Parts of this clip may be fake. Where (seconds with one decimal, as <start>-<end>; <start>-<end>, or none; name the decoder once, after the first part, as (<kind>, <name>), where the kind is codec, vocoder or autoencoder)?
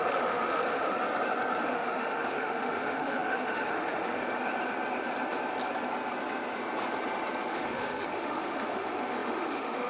0.0-0.9 (autoencoder, DAC-VAE); 1.6-4.2; 7.5-9.9